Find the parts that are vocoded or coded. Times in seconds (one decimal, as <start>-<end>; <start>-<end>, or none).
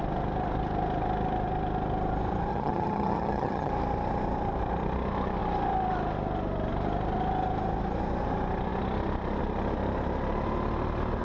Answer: 2.5-3.7